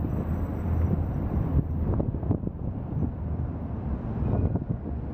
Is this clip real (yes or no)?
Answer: no